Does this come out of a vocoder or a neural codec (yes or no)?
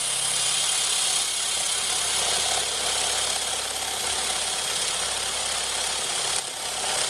no